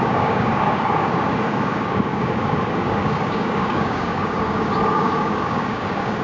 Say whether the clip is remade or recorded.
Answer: remade